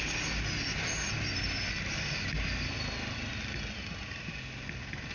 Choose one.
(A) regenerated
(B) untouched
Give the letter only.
B